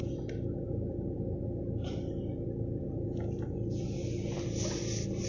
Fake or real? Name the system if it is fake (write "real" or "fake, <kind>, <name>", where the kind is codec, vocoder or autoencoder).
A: real